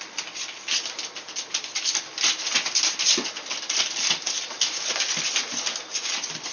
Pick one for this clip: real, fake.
real